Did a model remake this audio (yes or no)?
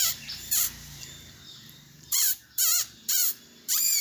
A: yes